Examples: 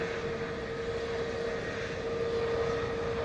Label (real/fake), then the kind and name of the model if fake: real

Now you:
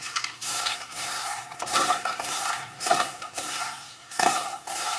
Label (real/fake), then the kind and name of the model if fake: fake, codec, SNAC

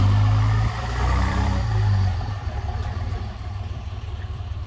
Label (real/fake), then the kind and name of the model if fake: fake, vocoder, BigVGAN v2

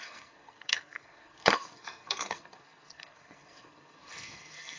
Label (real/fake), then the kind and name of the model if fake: fake, codec, SNAC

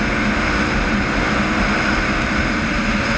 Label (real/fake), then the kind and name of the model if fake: real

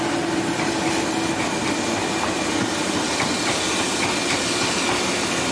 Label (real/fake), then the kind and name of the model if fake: real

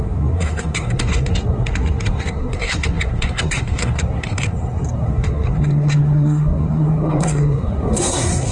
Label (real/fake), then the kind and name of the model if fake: fake, codec, SNAC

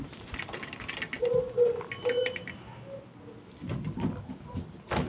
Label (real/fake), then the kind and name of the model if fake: real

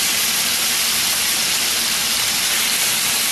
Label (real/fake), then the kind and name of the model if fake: fake, vocoder, BigVGAN v2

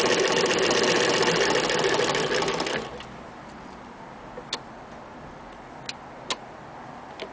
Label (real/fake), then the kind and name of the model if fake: real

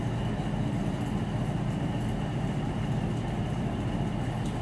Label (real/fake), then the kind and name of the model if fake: real